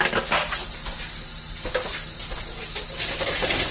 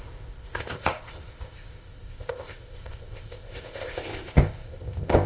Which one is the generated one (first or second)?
second